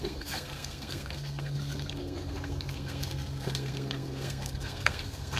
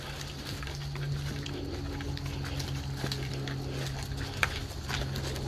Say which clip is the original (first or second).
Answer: second